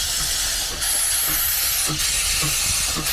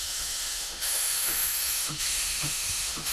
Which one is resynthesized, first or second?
second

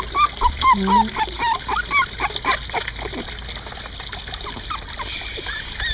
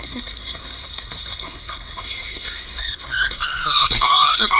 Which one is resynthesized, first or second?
second